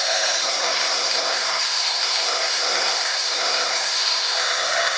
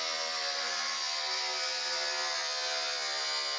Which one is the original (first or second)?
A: second